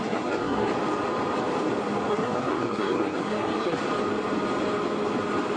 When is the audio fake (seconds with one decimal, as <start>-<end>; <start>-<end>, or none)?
0.0-0.7; 2.1-3.8